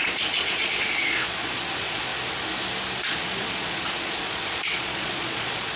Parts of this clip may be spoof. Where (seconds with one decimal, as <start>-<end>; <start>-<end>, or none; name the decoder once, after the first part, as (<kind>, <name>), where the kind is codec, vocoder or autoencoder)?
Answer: 0.0-2.1 (vocoder, Vocos); 3.0-5.8